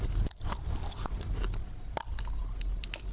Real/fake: real